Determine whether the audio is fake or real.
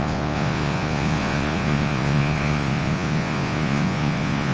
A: fake